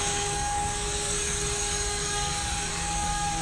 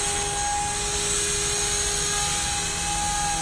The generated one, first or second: first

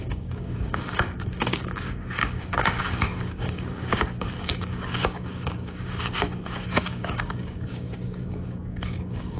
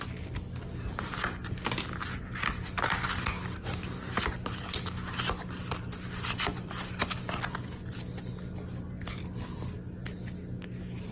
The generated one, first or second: first